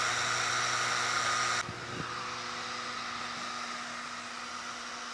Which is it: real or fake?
real